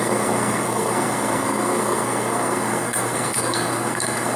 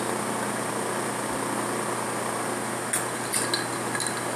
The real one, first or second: second